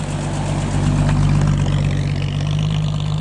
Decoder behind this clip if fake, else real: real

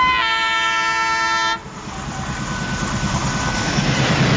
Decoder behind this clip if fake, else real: real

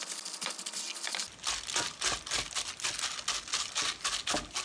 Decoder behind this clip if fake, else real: real